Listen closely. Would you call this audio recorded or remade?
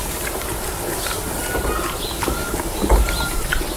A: recorded